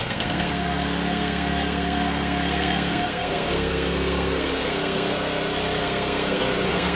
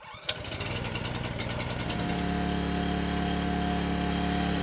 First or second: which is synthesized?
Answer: first